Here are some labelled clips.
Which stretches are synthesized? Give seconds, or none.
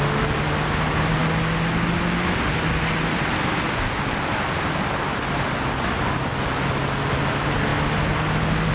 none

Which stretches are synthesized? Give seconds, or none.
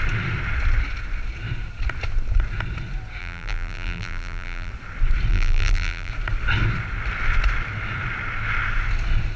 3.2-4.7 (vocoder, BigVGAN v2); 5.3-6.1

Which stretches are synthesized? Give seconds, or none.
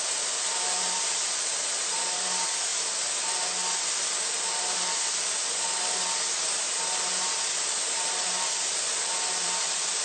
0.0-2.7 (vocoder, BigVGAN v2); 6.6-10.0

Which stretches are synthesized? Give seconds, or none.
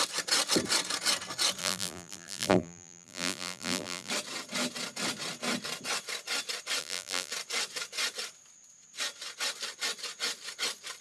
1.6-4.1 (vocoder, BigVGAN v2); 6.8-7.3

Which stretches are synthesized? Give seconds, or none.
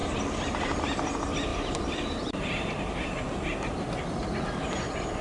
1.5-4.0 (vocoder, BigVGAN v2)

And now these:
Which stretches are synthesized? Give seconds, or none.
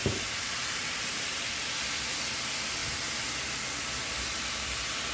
0.0-0.8 (vocoder, BigVGAN v2)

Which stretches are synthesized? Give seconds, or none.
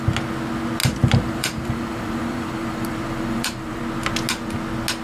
0.8-3.8 (vocoder, BigVGAN v2)